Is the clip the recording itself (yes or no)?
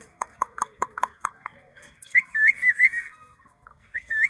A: no